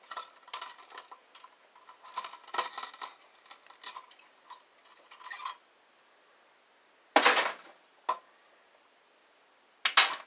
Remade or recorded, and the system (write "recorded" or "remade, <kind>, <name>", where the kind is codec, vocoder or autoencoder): recorded